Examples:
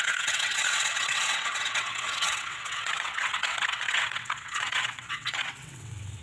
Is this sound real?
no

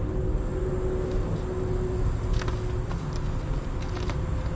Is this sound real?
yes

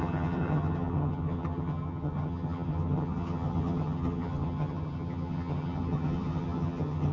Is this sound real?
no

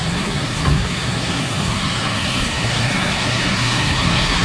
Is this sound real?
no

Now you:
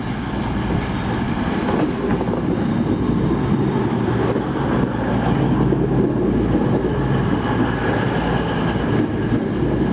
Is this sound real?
yes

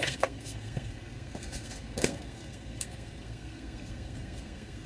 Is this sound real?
no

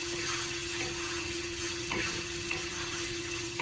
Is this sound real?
no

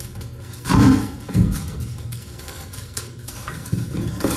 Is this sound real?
no